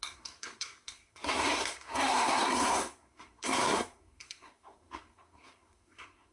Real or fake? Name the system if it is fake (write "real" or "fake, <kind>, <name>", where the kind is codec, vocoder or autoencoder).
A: fake, codec, SNAC